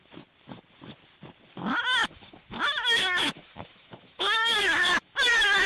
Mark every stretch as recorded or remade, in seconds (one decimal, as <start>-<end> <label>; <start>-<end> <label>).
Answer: 0.0-2.0 recorded; 2.0-5.7 remade